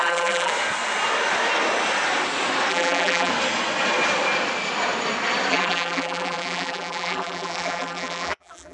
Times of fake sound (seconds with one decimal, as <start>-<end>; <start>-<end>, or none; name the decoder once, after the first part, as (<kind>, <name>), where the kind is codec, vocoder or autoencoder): 0.0-0.5 (vocoder, BigVGAN v2); 2.7-3.3; 5.5-8.7